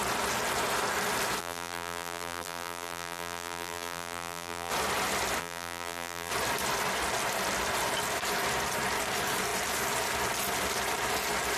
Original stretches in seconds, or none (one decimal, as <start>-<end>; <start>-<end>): 0.0-1.4; 4.7-5.4; 6.3-11.6